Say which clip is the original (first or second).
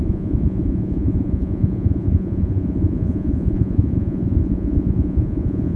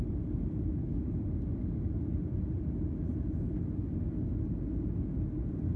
second